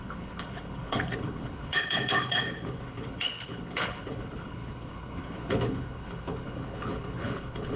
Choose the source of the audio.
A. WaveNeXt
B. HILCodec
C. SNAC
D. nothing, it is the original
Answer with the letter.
B